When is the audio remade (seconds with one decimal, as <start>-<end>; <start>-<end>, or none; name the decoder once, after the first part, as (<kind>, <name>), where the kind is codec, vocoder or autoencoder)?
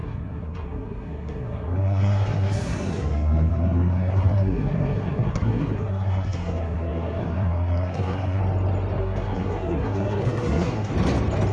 0.0-8.4 (codec, SNAC); 9.0-10.9